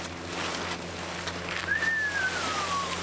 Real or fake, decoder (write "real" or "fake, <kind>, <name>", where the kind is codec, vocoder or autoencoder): real